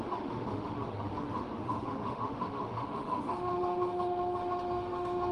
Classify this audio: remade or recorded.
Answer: remade